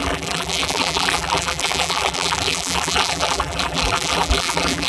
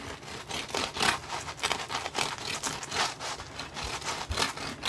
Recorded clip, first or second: second